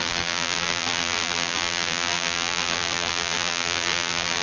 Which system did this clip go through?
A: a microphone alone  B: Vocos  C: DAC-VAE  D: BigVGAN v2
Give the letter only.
D